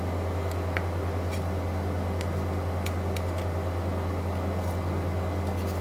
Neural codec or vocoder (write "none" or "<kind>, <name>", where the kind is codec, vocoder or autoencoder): none